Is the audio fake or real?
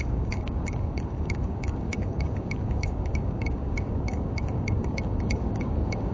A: fake